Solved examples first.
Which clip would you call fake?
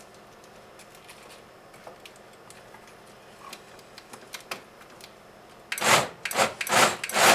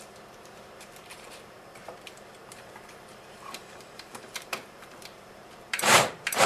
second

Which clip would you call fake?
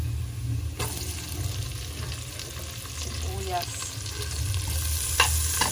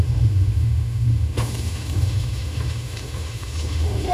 second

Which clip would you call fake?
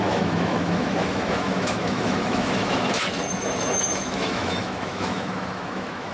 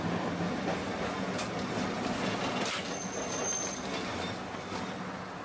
first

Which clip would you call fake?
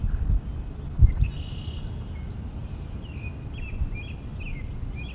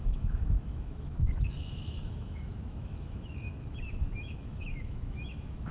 second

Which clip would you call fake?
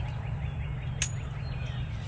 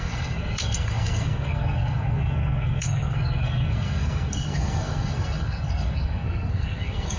second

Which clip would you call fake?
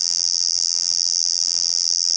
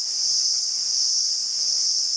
first